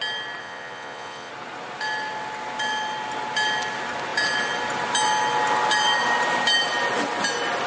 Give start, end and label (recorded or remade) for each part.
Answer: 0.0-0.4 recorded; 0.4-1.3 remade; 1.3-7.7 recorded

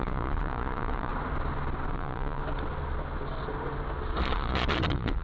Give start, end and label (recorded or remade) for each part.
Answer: 0.0-1.1 remade; 1.1-1.9 recorded; 1.9-2.4 remade; 2.4-4.2 recorded; 4.2-5.2 remade

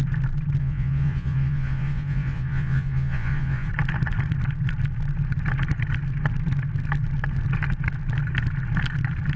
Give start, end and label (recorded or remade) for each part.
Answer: 0.0-0.6 recorded; 0.6-3.7 remade; 3.7-9.4 recorded

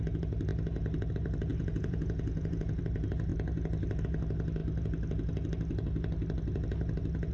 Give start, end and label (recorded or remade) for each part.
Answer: 0.0-1.5 recorded; 1.5-2.8 remade; 2.8-7.3 recorded

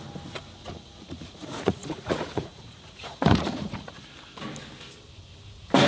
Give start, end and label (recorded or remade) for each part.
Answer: 0.0-0.6 recorded; 0.6-4.1 remade; 4.1-5.9 recorded

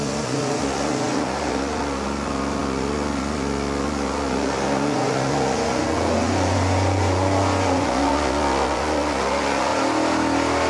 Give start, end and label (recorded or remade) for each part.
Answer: 0.0-9.7 remade; 9.7-10.7 recorded